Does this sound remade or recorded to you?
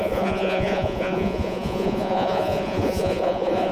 remade